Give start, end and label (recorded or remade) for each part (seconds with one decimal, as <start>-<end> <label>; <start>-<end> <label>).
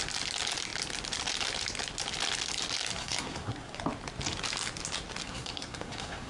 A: 0.0-3.0 recorded; 3.0-3.8 remade; 3.8-5.2 recorded; 5.2-6.3 remade